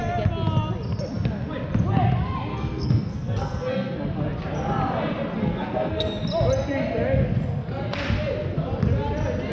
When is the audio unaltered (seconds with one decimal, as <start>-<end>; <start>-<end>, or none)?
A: 0.0-2.5; 4.0-5.4; 6.2-9.5